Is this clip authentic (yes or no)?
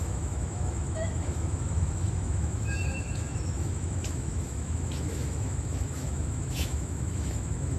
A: no